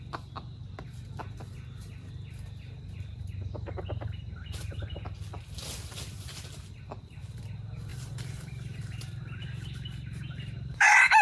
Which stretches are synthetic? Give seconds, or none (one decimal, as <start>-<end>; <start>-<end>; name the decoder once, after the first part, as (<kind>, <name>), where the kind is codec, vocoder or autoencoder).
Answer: 7.9-11.2 (vocoder, BigVGAN v2)